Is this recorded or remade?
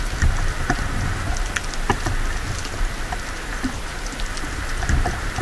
recorded